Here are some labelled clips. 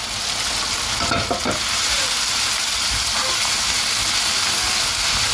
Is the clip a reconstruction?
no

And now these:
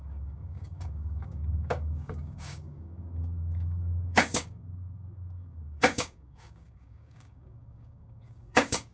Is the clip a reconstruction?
yes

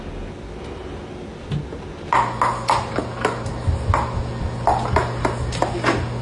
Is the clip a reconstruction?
no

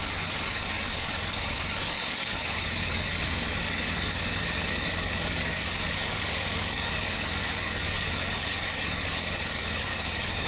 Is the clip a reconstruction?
yes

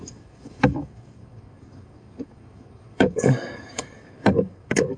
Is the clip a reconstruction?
yes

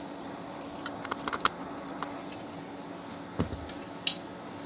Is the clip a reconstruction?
no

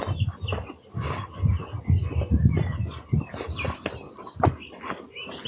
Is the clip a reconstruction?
no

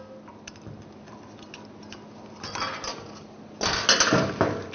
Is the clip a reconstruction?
no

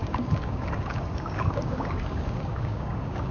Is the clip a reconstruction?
yes